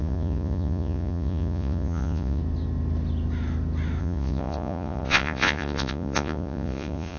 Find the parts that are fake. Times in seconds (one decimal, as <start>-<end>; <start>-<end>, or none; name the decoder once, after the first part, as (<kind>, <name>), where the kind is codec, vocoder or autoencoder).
0.0-2.4 (vocoder, Vocos); 4.0-7.2